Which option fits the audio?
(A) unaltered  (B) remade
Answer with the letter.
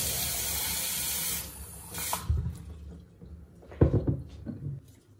A